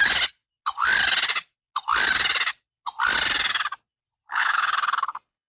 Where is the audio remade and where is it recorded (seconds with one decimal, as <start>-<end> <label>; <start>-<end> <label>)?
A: 0.0-4.3 recorded; 4.3-5.5 remade